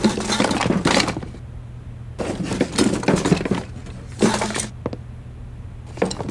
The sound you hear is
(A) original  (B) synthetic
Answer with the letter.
A